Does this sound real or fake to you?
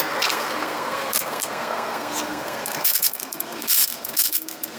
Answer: fake